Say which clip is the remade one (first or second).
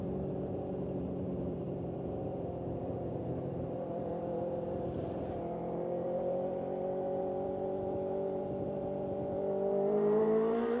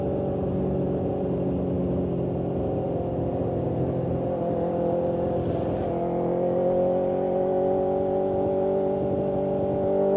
first